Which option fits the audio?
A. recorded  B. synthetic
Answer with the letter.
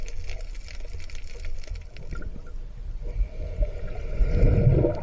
A